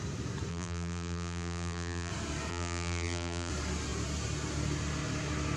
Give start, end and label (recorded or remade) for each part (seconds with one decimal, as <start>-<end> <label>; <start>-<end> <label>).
0.0-0.5 recorded; 0.5-2.1 remade; 2.1-2.5 recorded; 2.5-3.5 remade; 3.5-5.6 recorded